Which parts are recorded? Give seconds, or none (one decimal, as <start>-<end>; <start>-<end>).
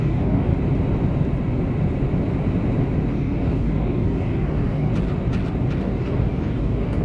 0.5-3.1; 4.9-5.8